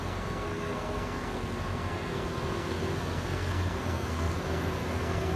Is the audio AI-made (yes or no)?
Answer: yes